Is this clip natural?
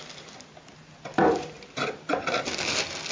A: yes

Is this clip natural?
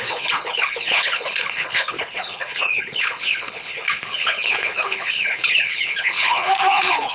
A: no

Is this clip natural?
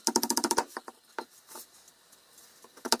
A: yes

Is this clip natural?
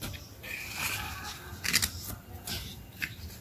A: yes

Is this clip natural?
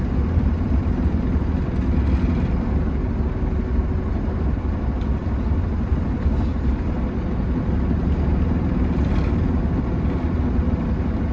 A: yes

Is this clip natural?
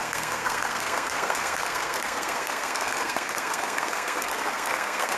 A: no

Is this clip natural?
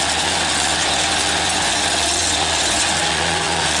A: no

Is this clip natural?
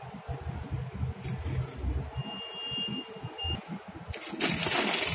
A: yes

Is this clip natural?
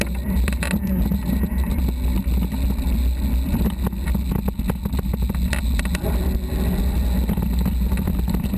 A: yes